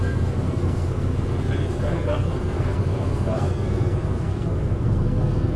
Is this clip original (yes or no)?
no